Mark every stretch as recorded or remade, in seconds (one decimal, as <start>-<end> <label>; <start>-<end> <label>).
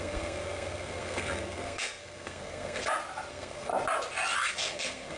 0.0-2.8 remade; 2.8-3.3 recorded; 3.3-3.7 remade; 3.7-4.5 recorded; 4.5-5.2 remade